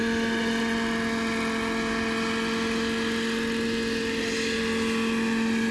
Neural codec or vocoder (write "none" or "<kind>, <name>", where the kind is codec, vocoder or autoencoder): none